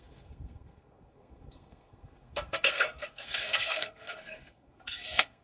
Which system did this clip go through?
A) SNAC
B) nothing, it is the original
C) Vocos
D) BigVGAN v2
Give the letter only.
A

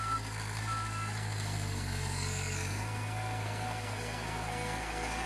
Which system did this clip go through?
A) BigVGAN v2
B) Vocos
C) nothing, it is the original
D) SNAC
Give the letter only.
D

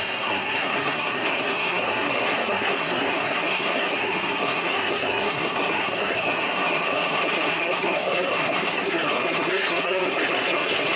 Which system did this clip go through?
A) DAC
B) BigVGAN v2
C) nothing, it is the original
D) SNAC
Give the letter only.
D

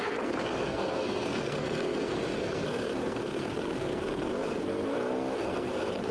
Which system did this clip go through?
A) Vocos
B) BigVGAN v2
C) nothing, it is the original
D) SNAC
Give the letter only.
D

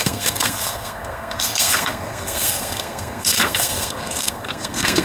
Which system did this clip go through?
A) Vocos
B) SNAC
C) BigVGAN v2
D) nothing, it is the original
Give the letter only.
B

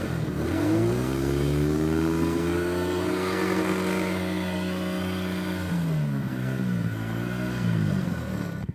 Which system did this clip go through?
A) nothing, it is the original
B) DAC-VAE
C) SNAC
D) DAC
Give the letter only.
C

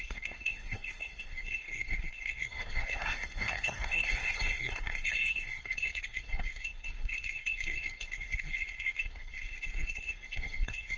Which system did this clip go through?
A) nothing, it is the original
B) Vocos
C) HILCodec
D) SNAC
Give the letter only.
D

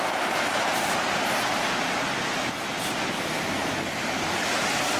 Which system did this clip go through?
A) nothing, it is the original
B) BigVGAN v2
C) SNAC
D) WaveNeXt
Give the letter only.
A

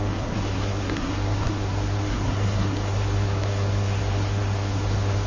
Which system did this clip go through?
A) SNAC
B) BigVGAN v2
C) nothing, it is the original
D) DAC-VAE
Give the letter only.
A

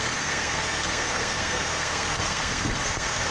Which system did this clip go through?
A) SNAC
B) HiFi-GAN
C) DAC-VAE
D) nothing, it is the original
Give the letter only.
A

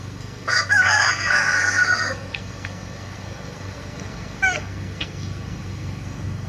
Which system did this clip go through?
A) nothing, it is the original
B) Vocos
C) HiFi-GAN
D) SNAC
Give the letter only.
D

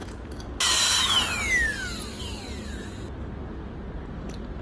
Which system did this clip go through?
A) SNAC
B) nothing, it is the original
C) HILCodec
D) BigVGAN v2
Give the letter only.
B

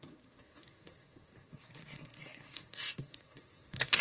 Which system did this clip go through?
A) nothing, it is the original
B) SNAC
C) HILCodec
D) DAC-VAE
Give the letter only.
B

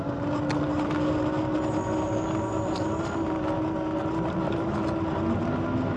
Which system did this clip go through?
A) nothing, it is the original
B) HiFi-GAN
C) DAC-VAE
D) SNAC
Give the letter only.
A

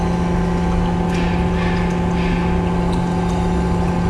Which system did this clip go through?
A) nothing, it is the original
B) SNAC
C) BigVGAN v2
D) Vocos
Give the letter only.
A